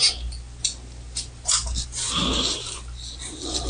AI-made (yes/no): no